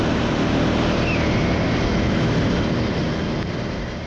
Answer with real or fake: real